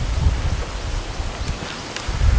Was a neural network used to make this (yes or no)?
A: no